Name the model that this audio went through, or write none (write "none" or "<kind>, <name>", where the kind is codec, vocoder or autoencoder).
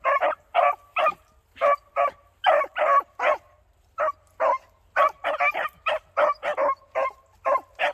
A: none